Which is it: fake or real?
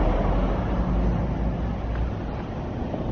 real